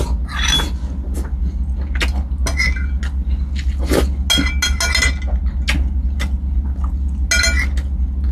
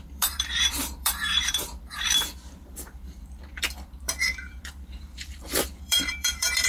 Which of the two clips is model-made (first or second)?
second